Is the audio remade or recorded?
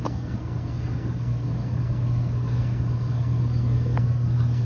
remade